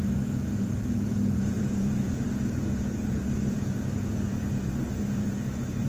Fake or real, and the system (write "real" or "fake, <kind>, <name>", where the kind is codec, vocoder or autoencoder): fake, vocoder, Vocos